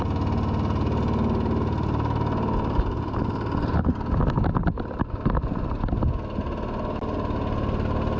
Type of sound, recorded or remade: recorded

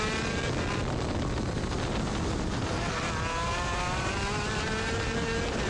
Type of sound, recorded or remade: recorded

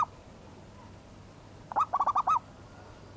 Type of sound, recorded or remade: recorded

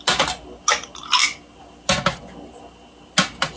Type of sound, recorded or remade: recorded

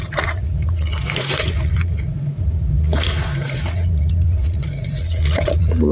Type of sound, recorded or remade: remade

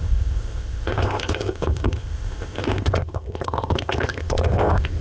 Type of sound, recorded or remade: remade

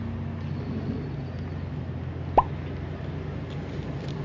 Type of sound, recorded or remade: recorded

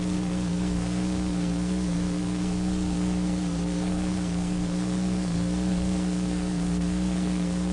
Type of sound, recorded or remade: remade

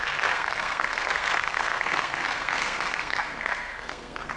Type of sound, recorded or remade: remade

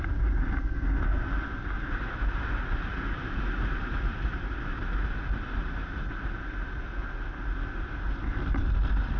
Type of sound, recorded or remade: recorded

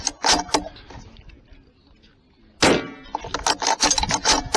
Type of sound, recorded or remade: recorded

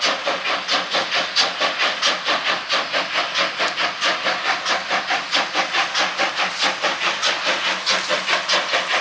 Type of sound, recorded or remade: recorded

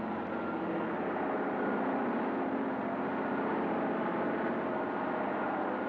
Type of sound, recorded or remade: recorded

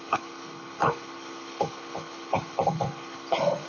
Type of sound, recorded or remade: remade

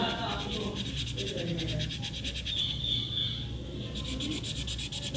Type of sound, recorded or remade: recorded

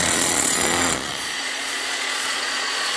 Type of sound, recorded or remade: remade